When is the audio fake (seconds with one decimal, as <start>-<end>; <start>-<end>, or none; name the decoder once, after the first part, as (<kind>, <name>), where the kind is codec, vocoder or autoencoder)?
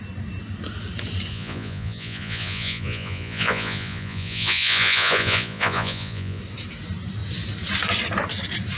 1.3-6.4 (vocoder, Vocos)